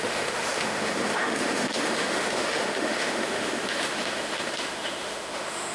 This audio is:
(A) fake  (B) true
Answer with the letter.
A